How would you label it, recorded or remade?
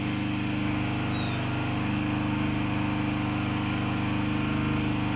recorded